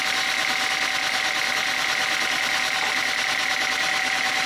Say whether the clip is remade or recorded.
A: recorded